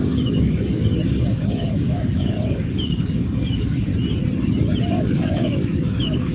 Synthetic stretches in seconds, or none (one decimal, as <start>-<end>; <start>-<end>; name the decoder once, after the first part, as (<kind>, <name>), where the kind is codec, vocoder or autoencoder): 0.0-3.9 (codec, DAC); 4.9-6.3